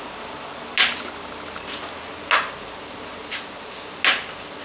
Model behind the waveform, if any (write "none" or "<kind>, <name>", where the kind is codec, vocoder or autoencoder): none